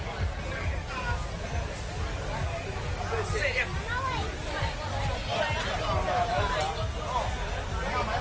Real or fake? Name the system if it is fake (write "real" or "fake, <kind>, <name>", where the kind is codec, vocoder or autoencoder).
real